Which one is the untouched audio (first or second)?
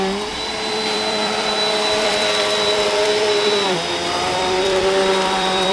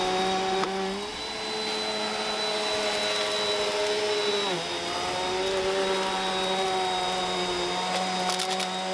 second